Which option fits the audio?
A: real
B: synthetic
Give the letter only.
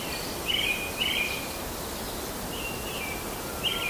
A